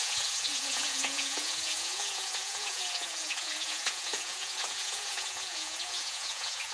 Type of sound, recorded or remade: remade